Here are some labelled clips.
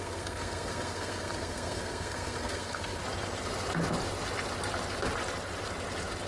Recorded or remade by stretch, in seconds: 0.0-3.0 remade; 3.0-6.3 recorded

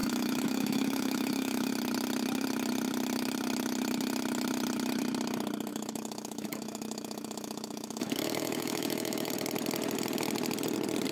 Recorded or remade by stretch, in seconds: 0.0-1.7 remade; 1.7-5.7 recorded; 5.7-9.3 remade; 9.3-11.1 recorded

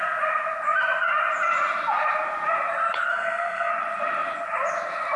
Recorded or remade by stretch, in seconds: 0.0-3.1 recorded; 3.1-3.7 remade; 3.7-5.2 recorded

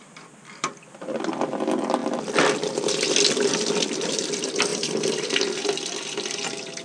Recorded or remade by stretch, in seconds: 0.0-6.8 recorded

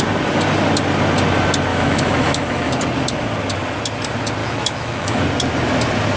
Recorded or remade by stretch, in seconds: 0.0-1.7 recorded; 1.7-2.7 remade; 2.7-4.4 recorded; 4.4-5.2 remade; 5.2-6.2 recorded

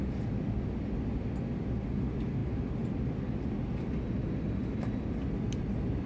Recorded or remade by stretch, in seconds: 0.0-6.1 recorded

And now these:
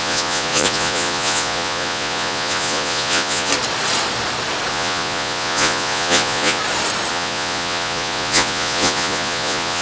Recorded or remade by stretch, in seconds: 0.0-3.5 remade; 3.5-4.7 recorded; 4.7-6.6 remade; 6.6-7.1 recorded; 7.1-9.8 remade

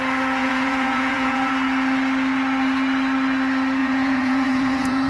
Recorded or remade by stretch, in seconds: 0.0-0.4 recorded; 0.4-1.5 remade; 1.5-3.8 recorded; 3.8-5.1 remade